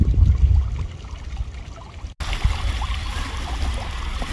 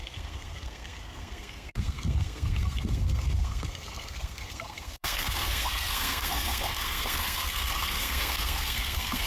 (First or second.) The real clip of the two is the first